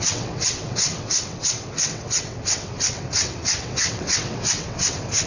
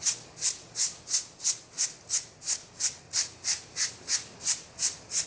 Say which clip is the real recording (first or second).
second